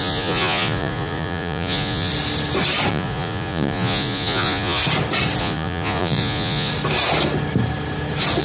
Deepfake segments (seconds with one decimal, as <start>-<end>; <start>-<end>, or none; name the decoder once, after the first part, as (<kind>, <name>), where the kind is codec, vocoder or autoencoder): 0.0-2.1 (vocoder, Vocos); 2.9-4.8; 5.4-6.7